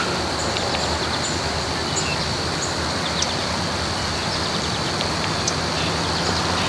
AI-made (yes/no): no